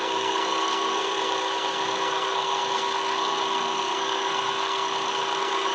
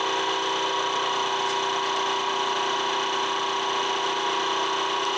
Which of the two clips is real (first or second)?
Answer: second